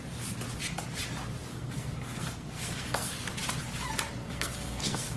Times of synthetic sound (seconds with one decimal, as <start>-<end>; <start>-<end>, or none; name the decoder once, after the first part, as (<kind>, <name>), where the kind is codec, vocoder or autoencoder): 1.5-3.3 (codec, SNAC); 4.2-5.2